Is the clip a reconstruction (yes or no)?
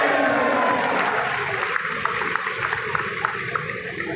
no